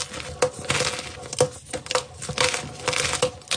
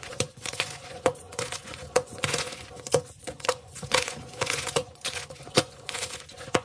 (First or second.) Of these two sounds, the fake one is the second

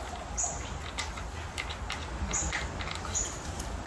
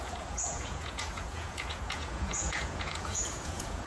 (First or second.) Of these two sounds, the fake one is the second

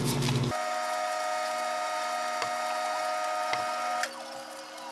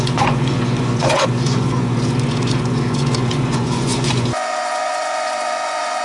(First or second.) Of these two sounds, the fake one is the second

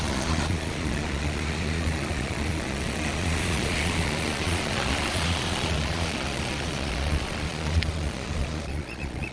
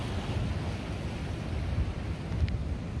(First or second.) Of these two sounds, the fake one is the first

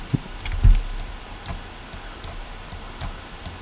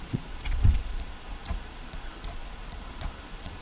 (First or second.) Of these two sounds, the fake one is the second